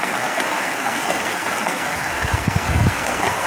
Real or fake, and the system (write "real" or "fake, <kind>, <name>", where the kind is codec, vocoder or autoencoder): fake, codec, SNAC